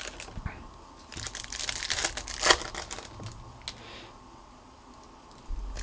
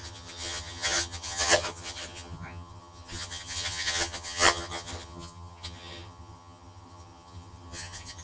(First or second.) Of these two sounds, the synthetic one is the second